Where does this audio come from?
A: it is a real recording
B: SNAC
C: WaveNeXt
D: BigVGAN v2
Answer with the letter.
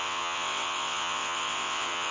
C